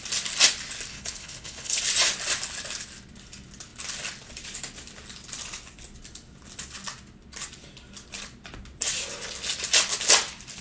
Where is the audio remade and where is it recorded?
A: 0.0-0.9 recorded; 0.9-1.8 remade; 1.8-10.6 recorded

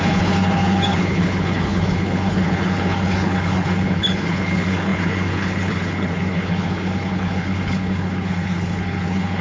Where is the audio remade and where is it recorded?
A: 0.0-9.4 remade

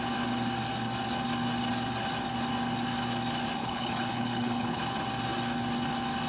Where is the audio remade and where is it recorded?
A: 0.0-3.6 recorded; 3.6-4.8 remade; 4.8-6.3 recorded

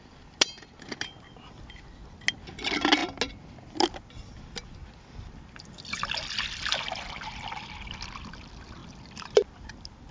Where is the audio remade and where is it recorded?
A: 0.0-10.1 recorded

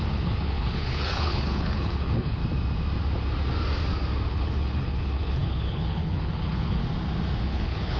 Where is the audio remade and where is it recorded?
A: 0.0-2.4 remade; 2.4-4.3 recorded; 4.3-6.8 remade; 6.8-7.4 recorded; 7.4-8.0 remade

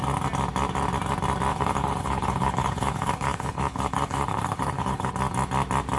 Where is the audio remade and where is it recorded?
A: 0.0-1.5 recorded; 1.5-5.1 remade; 5.1-6.0 recorded

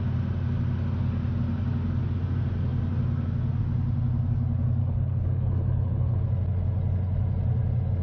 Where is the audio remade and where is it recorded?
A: 0.0-4.8 recorded; 4.8-6.2 remade; 6.2-8.0 recorded